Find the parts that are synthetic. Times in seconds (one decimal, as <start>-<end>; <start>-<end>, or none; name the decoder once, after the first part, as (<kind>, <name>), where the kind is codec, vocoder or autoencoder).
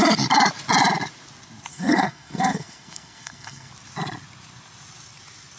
1.7-3.7 (codec, SNAC)